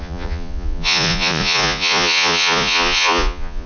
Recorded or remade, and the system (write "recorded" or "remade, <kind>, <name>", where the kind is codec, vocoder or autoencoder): remade, vocoder, Vocos